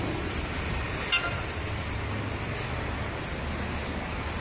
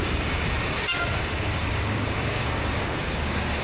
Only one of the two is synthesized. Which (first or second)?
second